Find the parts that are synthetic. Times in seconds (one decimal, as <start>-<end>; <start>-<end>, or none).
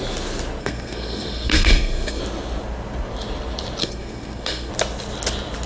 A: 0.6-2.2; 3.8-4.7